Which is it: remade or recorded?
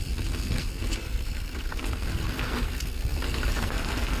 remade